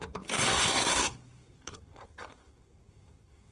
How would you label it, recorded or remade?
remade